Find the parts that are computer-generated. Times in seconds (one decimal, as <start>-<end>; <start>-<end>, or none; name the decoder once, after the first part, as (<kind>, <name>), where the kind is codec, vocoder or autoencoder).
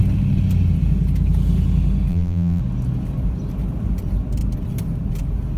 2.1-2.6 (vocoder, BigVGAN v2)